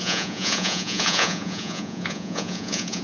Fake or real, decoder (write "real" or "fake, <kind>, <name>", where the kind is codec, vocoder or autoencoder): fake, vocoder, Vocos